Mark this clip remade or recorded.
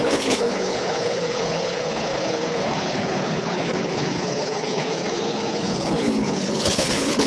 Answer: remade